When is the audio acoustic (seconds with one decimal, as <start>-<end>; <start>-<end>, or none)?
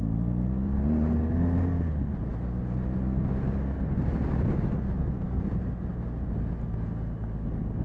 0.0-7.8